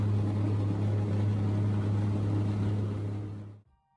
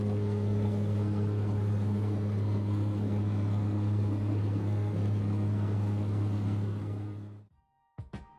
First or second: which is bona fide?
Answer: first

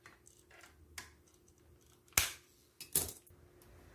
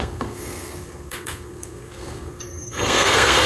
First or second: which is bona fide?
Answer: first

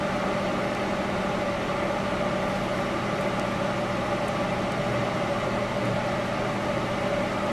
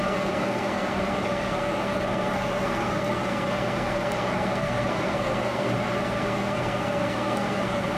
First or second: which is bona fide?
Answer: first